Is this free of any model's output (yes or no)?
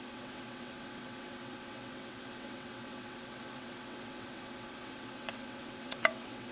no